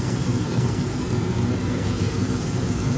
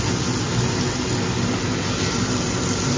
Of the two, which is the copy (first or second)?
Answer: first